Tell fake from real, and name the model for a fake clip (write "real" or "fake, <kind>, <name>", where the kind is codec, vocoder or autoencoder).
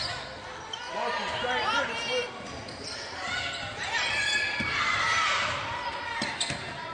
real